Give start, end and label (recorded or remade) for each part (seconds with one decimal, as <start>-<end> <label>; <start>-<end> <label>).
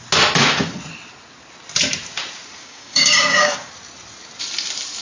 0.0-2.6 recorded; 2.6-3.7 remade; 3.7-5.0 recorded